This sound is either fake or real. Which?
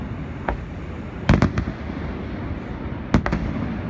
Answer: real